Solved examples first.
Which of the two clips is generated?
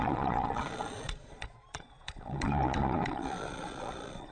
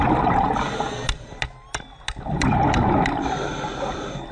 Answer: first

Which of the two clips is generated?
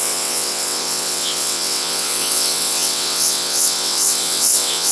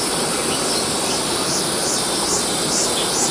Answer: first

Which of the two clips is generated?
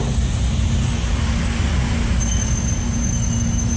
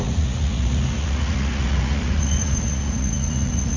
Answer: second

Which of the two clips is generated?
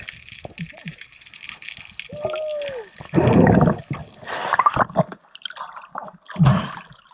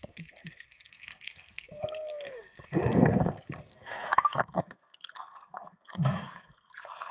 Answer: second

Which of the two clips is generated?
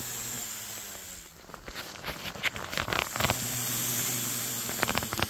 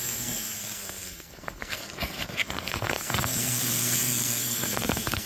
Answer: second